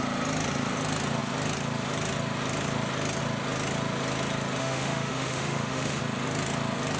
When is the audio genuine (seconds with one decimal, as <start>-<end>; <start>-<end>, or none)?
0.0-4.6; 6.0-7.0